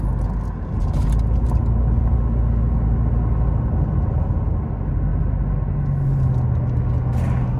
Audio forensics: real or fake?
real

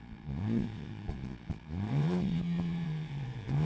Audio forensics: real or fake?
fake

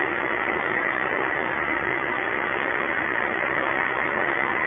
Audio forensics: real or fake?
fake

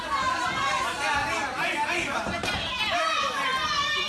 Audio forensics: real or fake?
real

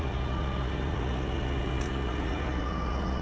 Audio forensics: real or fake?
fake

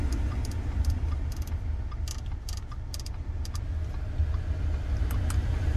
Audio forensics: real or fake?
real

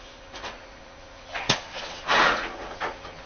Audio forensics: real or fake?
fake